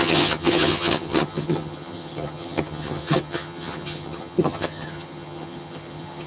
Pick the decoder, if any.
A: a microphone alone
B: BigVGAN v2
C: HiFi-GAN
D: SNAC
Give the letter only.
C